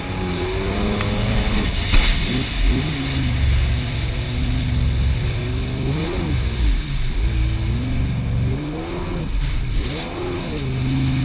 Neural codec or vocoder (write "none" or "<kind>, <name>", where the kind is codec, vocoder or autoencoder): none